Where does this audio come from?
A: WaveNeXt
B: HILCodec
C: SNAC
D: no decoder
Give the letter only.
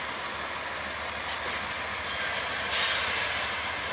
D